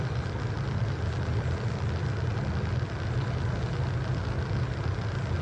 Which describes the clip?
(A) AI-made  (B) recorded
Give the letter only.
B